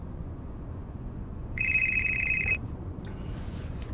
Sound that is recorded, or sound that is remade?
remade